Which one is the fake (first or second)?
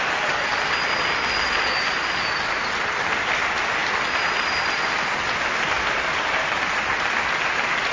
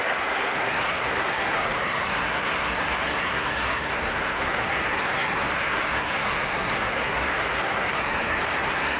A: second